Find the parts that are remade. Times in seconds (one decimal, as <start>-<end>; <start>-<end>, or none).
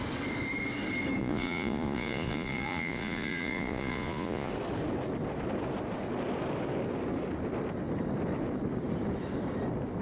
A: 1.2-4.5